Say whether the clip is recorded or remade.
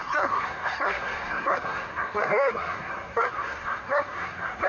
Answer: remade